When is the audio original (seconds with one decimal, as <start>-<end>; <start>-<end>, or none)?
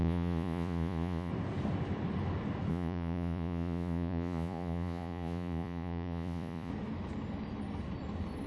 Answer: 1.3-2.7; 6.7-8.5